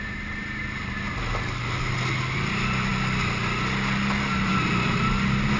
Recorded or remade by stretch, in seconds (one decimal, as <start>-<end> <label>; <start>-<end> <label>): 0.0-5.6 recorded